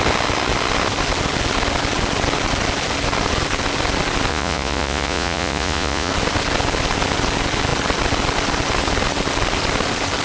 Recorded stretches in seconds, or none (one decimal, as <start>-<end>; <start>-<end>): 0.0-4.3; 6.1-10.2